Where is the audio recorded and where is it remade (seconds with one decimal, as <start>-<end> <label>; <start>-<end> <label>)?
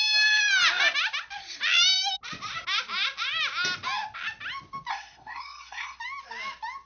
0.0-4.9 recorded; 4.9-6.0 remade; 6.0-6.9 recorded